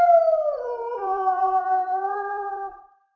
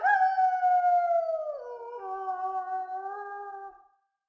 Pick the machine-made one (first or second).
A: first